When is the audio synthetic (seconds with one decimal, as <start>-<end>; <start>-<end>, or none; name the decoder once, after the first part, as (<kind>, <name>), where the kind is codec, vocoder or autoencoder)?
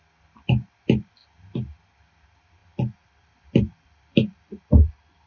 2.6-5.3 (vocoder, BigVGAN v2)